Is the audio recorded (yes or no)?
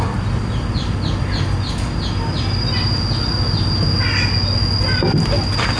yes